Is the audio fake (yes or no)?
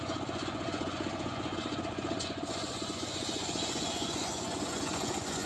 yes